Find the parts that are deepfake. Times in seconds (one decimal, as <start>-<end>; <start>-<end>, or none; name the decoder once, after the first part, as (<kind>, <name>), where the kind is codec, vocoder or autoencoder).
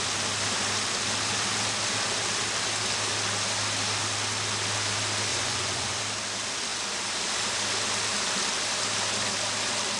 5.3-6.0 (vocoder, Vocos)